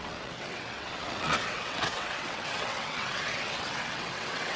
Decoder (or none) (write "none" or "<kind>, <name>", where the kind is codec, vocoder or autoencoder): vocoder, WaveNeXt